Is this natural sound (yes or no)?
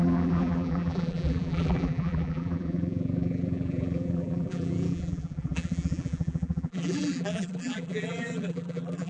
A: no